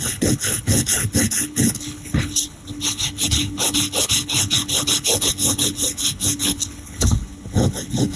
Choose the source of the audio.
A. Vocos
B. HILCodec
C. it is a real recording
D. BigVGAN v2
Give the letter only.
B